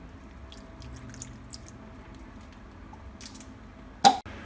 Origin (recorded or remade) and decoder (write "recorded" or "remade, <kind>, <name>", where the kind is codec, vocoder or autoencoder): recorded